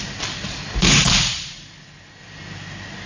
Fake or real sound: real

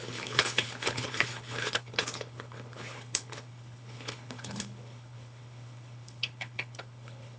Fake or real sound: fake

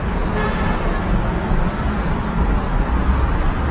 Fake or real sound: real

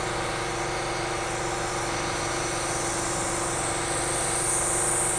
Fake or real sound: real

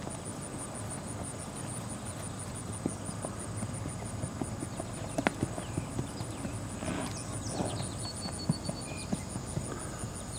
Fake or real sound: real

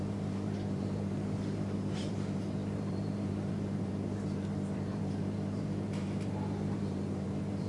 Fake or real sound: fake